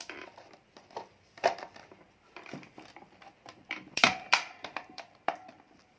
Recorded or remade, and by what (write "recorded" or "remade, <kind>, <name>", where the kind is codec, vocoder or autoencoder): remade, vocoder, BigVGAN v2